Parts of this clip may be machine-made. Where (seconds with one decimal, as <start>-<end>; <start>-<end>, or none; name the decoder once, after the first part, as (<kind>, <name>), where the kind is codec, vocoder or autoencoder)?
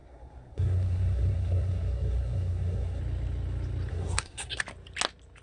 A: 0.0-3.0 (codec, SNAC); 3.9-4.6